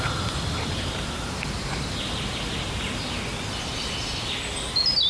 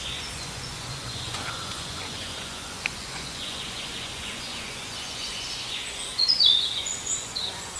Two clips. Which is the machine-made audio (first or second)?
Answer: second